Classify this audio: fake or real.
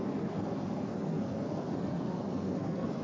fake